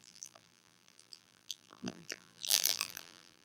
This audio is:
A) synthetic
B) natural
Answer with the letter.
A